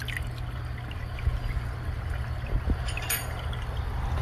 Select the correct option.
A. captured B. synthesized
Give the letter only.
A